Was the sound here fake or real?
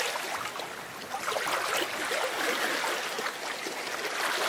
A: real